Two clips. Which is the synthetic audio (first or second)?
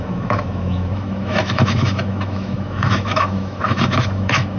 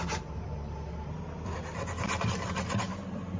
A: first